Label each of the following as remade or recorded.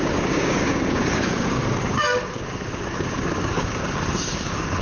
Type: remade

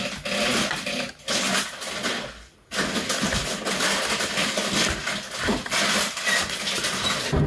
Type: recorded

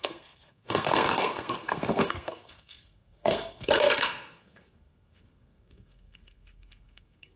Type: remade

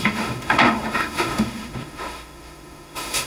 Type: remade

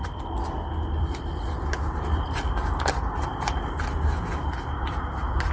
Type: recorded